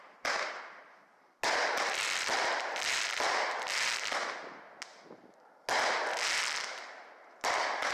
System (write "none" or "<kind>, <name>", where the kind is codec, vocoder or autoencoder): none